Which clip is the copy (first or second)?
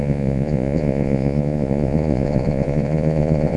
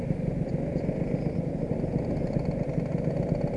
first